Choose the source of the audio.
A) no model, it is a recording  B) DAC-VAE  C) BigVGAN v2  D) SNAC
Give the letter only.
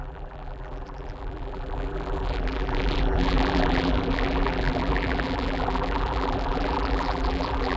C